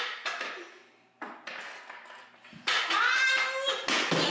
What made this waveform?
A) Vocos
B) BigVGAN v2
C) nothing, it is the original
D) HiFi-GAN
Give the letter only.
C